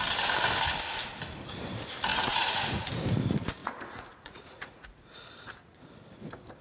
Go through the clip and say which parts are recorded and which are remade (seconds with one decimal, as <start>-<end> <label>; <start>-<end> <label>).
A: 0.0-2.1 recorded; 2.1-2.9 remade; 2.9-3.6 recorded; 3.6-5.9 remade; 5.9-6.6 recorded